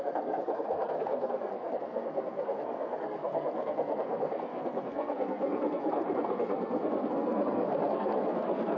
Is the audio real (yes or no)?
no